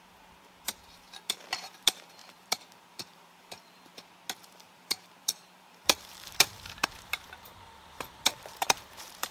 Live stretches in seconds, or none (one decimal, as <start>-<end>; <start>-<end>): 3.9-4.4